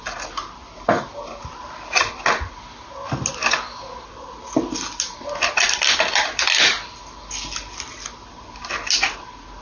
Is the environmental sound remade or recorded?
recorded